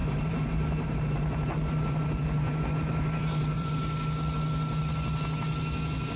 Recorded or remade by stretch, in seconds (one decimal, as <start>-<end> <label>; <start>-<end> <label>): 0.0-3.7 remade; 3.7-6.2 recorded